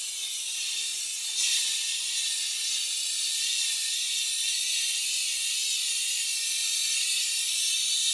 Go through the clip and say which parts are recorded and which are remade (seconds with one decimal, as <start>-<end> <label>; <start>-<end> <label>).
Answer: 0.0-8.1 recorded